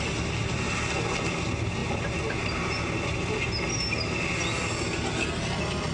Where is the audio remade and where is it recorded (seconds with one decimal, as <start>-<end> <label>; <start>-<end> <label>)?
0.0-5.9 recorded